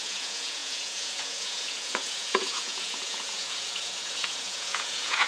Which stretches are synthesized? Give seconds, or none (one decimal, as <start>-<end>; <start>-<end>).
0.0-5.3